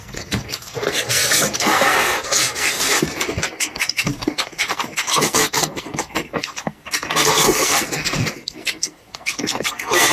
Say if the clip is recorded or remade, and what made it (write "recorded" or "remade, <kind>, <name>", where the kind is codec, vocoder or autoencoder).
remade, codec, SNAC